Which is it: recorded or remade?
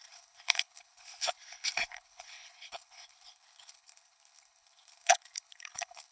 remade